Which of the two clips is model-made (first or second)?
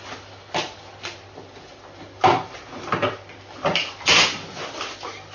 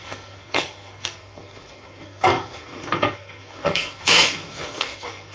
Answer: second